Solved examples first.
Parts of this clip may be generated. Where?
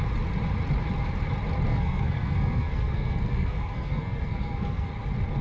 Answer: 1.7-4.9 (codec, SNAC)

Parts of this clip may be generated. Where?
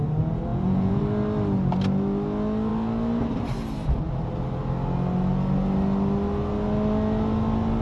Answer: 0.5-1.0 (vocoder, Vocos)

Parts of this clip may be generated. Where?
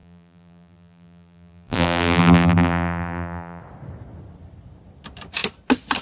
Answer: 0.0-3.6 (vocoder, BigVGAN v2)